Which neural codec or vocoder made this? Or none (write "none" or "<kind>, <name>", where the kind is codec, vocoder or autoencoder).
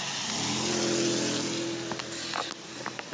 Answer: none